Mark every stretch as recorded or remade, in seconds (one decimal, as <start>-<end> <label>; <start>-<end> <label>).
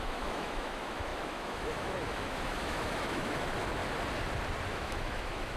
0.0-3.8 remade; 3.8-4.7 recorded; 4.7-5.6 remade